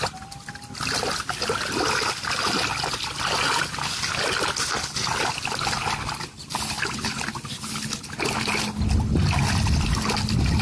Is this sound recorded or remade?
recorded